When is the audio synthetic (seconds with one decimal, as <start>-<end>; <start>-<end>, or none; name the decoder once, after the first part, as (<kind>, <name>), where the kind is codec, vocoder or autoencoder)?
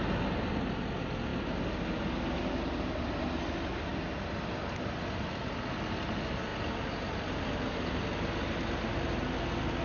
none